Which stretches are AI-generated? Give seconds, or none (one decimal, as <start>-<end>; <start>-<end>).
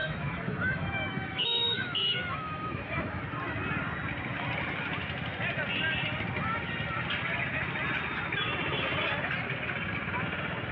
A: 0.0-3.2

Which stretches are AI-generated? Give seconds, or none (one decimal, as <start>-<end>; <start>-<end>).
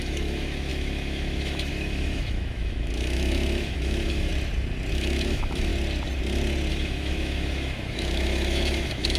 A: 0.0-4.3; 4.9-5.7; 6.7-9.2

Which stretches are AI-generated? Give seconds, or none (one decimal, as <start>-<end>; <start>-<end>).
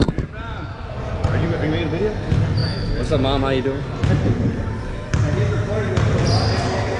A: none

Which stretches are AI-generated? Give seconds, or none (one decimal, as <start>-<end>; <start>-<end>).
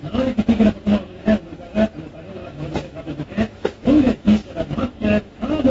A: 0.0-1.4; 2.3-5.7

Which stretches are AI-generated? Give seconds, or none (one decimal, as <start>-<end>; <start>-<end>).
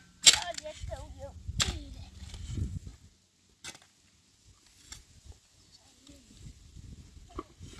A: none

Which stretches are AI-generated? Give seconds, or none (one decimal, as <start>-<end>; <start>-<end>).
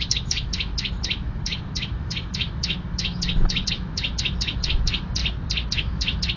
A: 0.0-5.2; 5.7-6.4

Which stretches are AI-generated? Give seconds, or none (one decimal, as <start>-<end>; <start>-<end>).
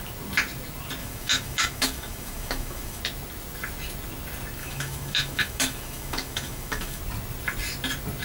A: 1.0-3.0; 4.6-7.0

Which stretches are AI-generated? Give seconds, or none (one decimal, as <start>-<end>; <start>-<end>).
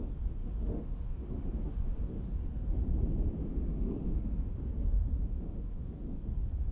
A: 0.4-2.8; 3.7-6.2